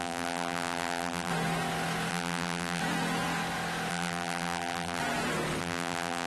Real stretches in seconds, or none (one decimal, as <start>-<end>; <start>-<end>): 1.3-2.1; 2.8-3.9; 5.0-5.6